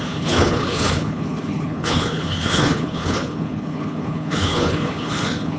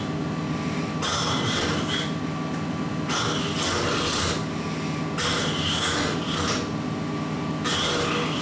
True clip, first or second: second